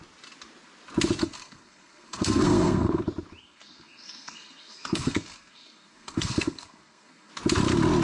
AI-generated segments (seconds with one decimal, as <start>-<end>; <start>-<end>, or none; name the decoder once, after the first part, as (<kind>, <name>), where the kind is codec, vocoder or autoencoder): 1.2-3.0 (codec, SNAC); 3.4-7.3